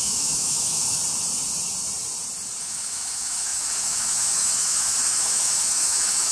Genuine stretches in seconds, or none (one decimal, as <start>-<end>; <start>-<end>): 1.0-2.6